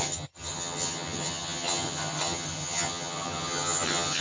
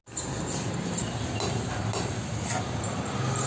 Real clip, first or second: second